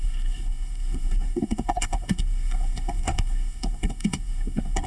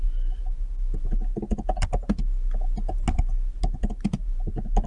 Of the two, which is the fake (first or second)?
first